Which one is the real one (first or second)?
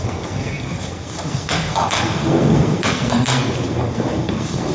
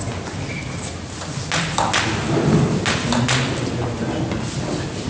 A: second